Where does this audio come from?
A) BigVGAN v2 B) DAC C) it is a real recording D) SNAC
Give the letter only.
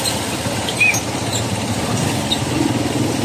C